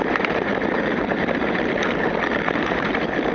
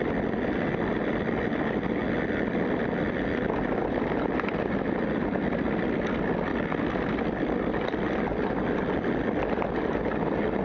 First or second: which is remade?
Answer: first